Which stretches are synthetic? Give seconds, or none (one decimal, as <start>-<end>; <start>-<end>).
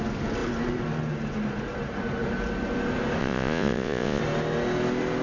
3.2-4.2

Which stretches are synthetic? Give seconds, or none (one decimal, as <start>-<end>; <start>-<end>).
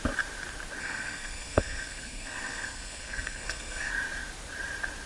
0.8-3.9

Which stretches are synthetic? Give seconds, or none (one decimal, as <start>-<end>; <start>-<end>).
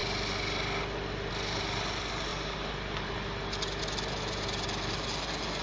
2.3-3.1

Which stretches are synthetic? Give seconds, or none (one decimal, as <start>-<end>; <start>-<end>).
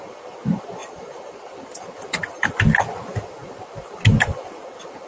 0.8-2.5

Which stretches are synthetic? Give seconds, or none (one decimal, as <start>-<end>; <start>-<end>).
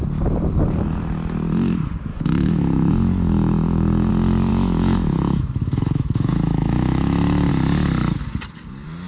2.1-4.1; 4.5-7.5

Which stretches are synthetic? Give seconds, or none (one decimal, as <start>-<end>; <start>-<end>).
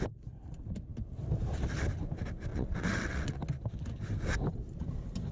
2.5-3.4